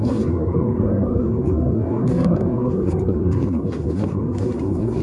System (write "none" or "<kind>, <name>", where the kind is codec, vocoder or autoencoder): codec, SNAC